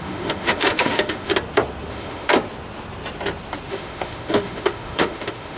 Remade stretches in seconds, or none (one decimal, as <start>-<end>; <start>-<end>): 0.0-1.3; 1.9-2.3; 3.7-5.6